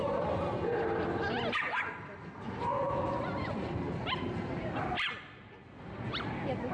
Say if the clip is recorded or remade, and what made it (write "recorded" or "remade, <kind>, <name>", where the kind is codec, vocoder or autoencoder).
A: recorded